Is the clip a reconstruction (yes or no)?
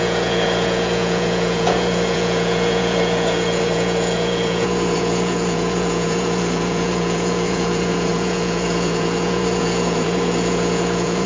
yes